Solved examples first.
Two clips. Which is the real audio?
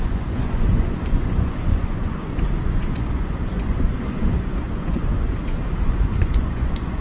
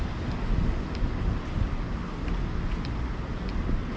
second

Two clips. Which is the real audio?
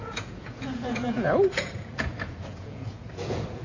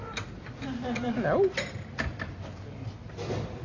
second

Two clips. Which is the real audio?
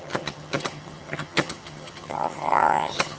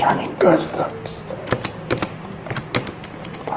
second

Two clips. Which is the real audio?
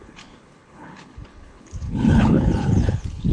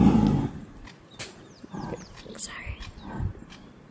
second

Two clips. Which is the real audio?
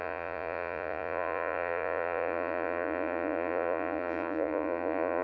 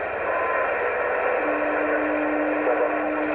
second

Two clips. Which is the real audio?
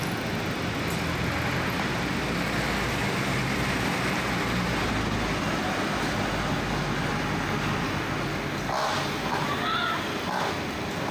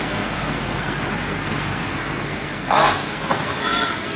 first